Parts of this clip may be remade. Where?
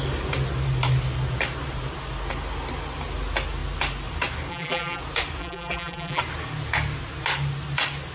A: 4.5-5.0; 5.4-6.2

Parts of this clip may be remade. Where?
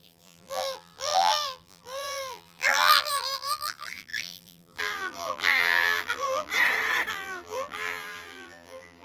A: 0.0-6.5; 7.1-9.0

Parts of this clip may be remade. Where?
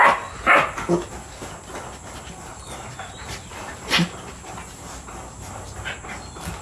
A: 2.5-4.3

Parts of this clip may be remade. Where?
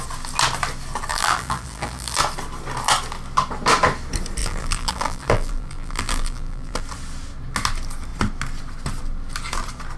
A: 1.1-2.2; 4.4-6.8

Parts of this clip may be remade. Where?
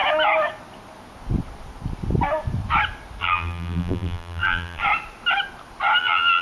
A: 3.2-4.8; 6.0-6.4